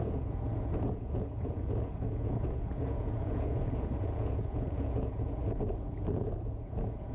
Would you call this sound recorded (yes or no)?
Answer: no